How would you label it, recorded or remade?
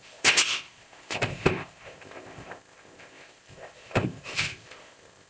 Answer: remade